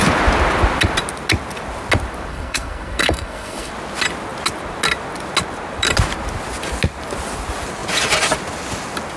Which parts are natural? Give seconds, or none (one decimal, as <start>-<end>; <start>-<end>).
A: 0.0-2.3; 3.7-9.2